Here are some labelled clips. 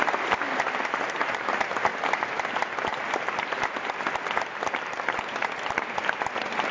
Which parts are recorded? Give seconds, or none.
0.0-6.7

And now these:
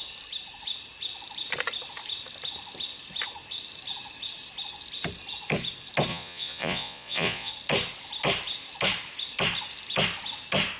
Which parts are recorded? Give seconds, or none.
0.0-6.1; 7.5-10.8

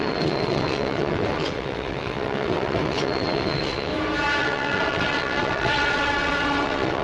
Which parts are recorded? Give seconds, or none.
3.9-4.4

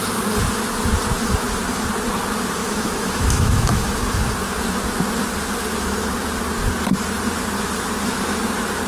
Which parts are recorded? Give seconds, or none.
0.0-2.6; 3.9-8.9

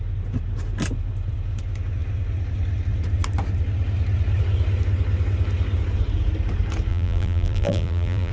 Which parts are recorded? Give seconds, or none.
0.0-6.9

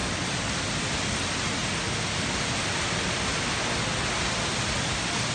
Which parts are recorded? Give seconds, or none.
0.0-5.3

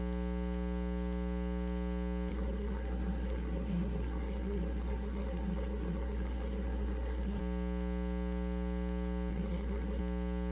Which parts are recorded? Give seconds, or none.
0.0-2.3; 7.4-9.3; 10.0-10.5